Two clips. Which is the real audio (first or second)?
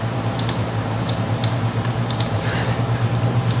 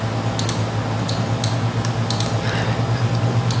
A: second